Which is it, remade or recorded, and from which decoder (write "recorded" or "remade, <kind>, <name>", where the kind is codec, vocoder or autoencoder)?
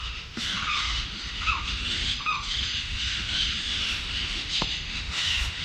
remade, autoencoder, DAC-VAE